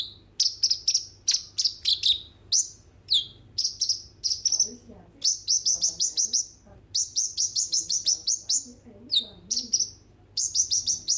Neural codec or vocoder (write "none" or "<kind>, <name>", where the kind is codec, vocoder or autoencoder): none